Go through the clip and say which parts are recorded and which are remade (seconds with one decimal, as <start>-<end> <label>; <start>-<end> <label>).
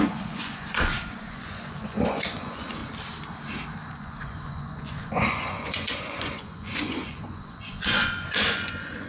0.0-2.8 remade; 2.8-3.9 recorded; 3.9-9.1 remade